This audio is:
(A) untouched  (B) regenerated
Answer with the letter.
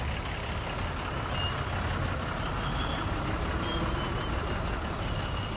A